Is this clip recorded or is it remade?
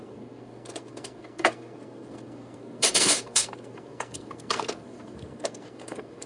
remade